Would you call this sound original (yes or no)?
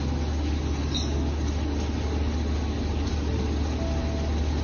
yes